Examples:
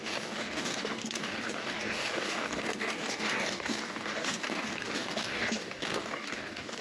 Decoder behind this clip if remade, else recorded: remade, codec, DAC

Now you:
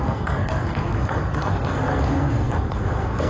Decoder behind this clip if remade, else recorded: remade, codec, SNAC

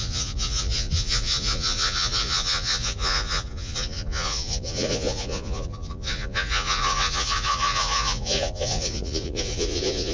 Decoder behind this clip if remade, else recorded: remade, vocoder, Vocos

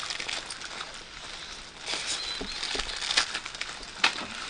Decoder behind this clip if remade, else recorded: recorded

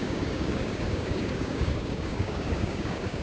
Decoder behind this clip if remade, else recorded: remade, codec, DAC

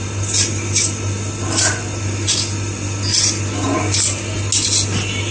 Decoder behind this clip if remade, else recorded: recorded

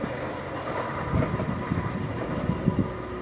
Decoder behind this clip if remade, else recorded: recorded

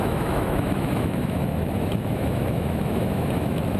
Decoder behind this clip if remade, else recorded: remade, autoencoder, DAC-VAE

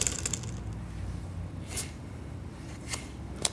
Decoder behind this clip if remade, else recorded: recorded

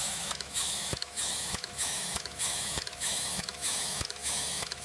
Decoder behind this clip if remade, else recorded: remade, autoencoder, DAC-VAE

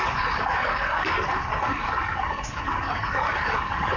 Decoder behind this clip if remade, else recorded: remade, codec, DAC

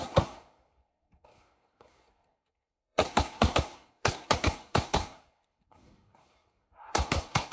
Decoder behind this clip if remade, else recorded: remade, codec, SNAC